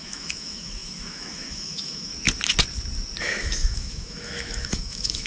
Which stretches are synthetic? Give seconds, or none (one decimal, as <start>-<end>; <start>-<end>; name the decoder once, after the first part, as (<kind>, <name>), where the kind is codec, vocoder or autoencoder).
0.0-2.1 (autoencoder, DAC-VAE); 3.2-5.3